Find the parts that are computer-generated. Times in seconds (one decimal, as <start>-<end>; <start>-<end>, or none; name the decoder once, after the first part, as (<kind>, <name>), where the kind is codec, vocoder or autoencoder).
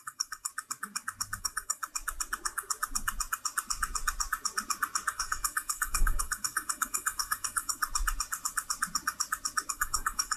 0.0-0.5 (codec, DAC); 1.4-1.8; 5.1-7.8; 9.7-10.4